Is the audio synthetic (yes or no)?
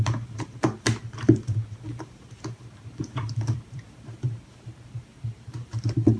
yes